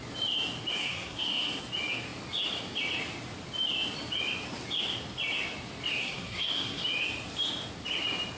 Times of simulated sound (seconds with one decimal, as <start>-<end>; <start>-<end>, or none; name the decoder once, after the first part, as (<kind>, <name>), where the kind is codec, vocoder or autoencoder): 0.8-1.6 (codec, SNAC); 6.0-6.8